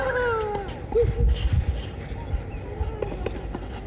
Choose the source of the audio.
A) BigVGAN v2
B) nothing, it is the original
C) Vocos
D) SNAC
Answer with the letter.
B